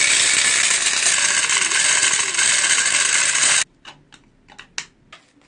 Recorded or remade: recorded